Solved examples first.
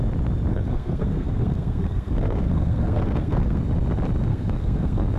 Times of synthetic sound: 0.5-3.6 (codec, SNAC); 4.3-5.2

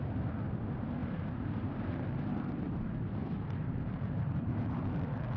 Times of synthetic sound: 1.0-2.8 (vocoder, BigVGAN v2); 3.2-4.8

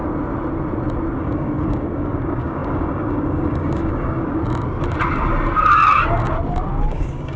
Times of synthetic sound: 1.2-4.4 (codec, DAC); 6.9-7.4

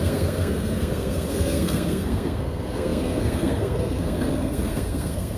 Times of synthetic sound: 0.0-5.4 (codec, SNAC)

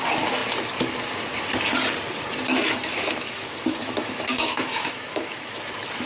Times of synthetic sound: 2.5-5.6 (autoencoder, DAC-VAE)